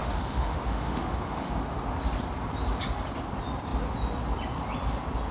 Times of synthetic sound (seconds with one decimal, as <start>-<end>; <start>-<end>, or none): 0.0-1.5